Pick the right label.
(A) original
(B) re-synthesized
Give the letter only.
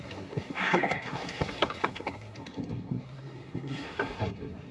B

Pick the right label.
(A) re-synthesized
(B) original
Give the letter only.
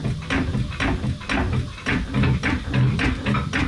B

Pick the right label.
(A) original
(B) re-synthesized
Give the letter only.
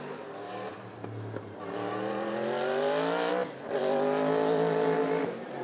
A